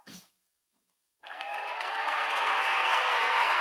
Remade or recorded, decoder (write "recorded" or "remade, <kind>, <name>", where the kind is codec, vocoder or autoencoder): remade, codec, SNAC